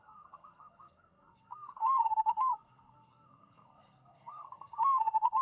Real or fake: fake